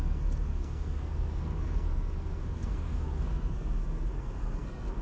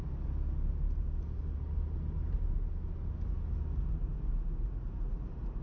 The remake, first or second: first